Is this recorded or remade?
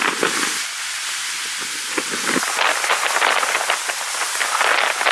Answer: recorded